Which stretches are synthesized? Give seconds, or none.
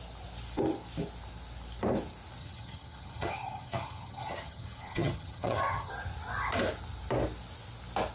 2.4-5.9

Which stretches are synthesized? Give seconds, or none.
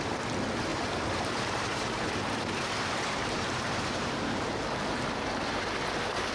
0.7-4.5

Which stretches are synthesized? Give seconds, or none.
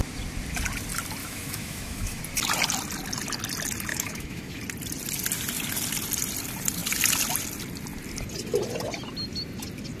1.2-2.2; 3.9-4.6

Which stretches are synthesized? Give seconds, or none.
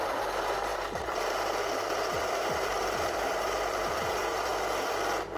0.0-4.5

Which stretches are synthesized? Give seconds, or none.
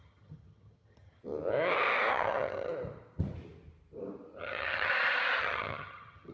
0.0-1.2; 2.1-2.7; 4.4-4.9; 5.4-6.3